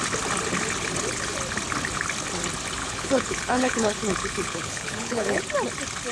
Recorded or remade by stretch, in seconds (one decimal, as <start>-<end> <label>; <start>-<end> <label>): 0.0-2.8 recorded; 2.8-5.4 remade; 5.4-6.1 recorded